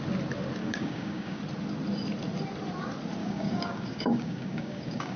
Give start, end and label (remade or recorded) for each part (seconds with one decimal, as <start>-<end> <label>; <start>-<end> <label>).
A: 0.0-0.6 recorded; 0.6-1.4 remade; 1.4-3.2 recorded; 3.2-5.2 remade